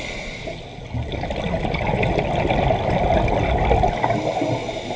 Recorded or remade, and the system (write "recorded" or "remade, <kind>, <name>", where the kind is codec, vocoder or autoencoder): recorded